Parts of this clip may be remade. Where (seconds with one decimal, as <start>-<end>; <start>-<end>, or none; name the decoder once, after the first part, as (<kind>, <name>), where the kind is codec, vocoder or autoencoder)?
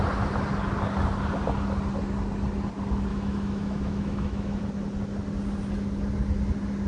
3.1-4.6 (autoencoder, DAC-VAE)